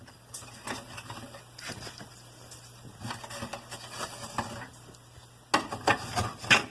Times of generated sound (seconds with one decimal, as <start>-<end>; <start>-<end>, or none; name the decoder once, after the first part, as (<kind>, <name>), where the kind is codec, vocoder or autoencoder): none